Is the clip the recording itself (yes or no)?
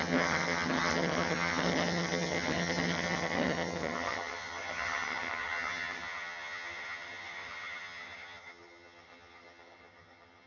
no